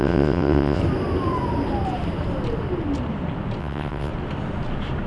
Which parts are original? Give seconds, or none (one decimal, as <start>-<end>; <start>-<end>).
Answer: 0.8-3.6; 4.1-5.1